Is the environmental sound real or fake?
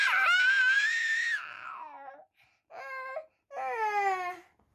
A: real